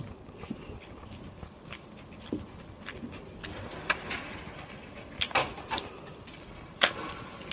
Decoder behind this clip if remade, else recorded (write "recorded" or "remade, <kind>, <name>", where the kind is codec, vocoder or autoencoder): recorded